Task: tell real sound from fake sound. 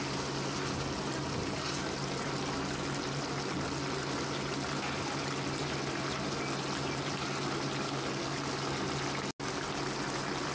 real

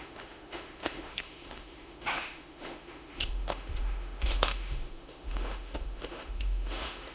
fake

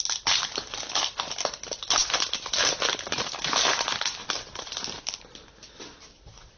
real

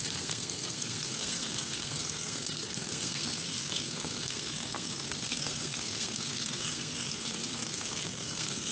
fake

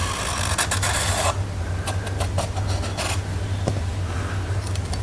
real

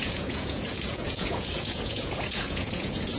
fake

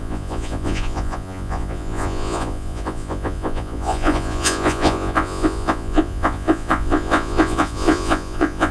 fake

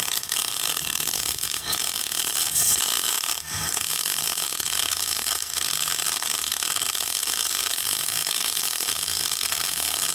fake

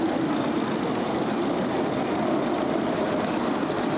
real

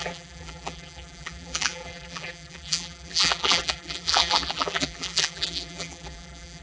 fake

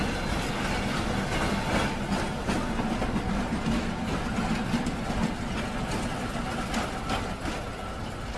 real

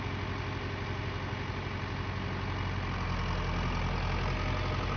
real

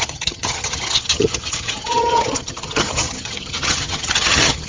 fake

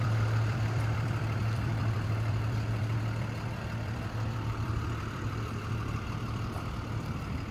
fake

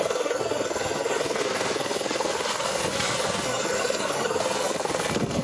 fake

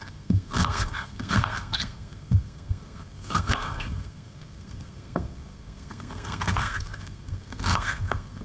fake